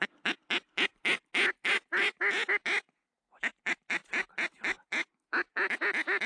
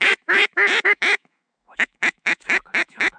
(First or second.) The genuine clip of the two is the first